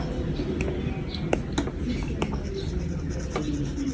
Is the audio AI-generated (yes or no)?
no